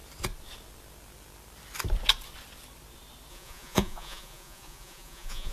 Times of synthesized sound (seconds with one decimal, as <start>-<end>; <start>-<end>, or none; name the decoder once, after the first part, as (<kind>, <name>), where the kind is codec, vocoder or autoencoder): 3.3-5.5 (vocoder, Vocos)